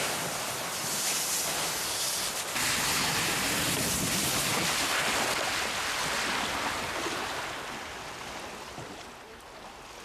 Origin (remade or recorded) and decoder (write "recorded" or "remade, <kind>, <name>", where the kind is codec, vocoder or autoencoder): recorded